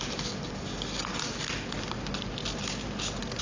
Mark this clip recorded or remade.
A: recorded